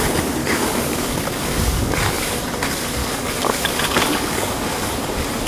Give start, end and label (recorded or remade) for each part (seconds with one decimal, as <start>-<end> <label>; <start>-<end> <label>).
0.0-0.4 recorded; 0.4-2.4 remade; 2.4-3.0 recorded; 3.0-4.9 remade; 4.9-5.5 recorded